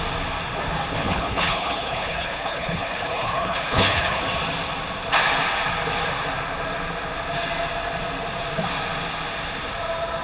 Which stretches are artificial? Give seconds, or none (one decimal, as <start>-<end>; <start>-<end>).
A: 1.0-4.2